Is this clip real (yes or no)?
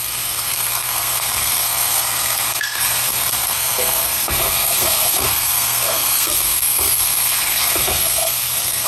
no